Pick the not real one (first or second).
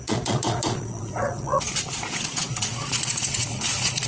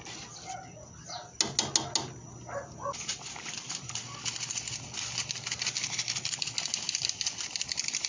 first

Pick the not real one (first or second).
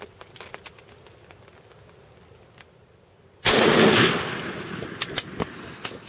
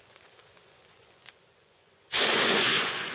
second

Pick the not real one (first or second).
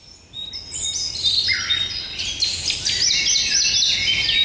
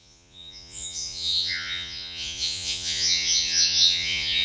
second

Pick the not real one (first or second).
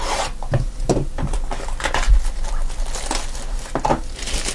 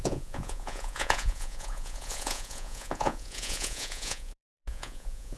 second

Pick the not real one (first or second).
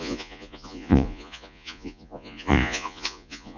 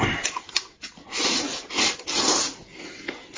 first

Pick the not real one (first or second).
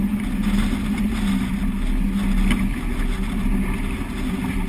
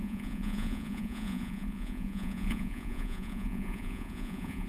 second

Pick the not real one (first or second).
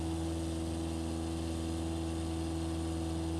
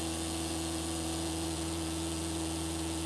second